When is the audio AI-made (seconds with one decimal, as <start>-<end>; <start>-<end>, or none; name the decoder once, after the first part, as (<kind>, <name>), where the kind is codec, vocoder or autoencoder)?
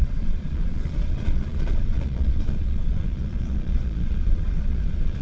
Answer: 0.0-5.2 (vocoder, Vocos)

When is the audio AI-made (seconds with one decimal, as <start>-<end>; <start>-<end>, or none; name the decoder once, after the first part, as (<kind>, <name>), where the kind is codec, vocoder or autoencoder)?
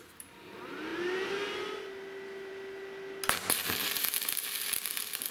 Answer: none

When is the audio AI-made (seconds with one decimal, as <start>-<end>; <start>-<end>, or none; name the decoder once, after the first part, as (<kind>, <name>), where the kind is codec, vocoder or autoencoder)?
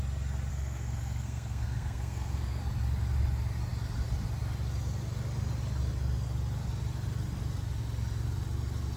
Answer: 0.5-2.6 (codec, SNAC)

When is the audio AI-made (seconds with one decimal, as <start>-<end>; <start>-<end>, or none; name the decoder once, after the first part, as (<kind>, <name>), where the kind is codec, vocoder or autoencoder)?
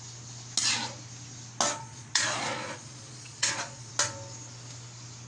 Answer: 1.7-3.9 (vocoder, Vocos)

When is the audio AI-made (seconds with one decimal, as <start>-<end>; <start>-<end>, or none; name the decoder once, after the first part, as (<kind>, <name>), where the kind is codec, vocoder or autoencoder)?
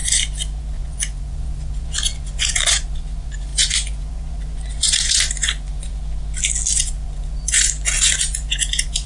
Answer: 0.6-6.0 (vocoder, Vocos); 6.8-9.1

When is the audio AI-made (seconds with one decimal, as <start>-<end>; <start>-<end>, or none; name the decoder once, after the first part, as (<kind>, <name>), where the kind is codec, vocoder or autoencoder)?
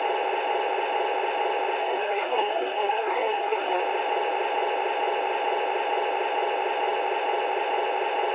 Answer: 1.8-3.8 (codec, SNAC)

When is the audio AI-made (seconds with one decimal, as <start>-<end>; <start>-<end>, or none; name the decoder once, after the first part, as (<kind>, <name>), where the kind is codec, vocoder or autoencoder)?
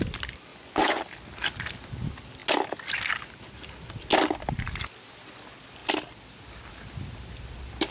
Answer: 0.5-1.0 (vocoder, Vocos)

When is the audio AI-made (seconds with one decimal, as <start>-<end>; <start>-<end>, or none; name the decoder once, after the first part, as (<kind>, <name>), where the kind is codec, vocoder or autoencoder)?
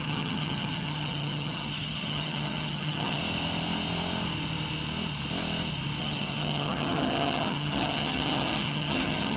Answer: 0.0-3.2 (vocoder, HiFi-GAN); 6.0-9.4